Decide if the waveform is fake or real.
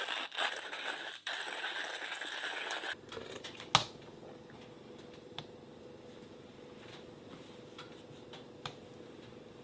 real